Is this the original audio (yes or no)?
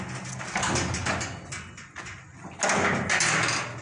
yes